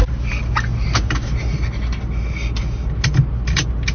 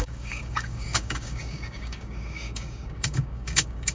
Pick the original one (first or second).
first